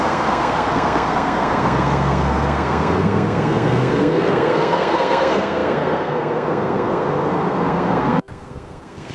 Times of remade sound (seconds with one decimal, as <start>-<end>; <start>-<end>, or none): 0.0-9.1